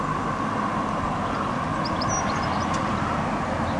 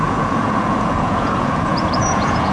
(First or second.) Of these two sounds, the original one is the first